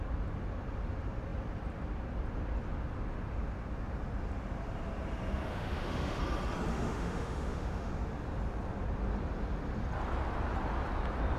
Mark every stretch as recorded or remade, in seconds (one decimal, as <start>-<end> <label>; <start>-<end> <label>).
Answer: 0.0-5.5 recorded; 5.5-6.2 remade; 6.2-6.7 recorded; 6.7-7.9 remade; 7.9-11.4 recorded